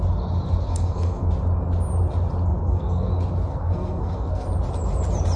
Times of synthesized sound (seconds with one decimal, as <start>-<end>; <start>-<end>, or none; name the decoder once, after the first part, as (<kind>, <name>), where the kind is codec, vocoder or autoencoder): 0.7-1.3 (codec, SNAC); 2.5-3.1; 3.5-4.5